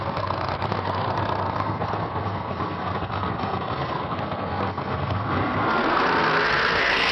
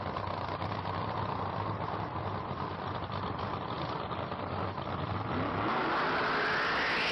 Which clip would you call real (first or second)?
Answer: second